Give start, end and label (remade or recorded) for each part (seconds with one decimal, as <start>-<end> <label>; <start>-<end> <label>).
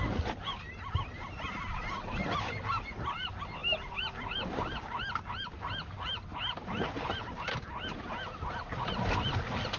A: 0.0-9.8 recorded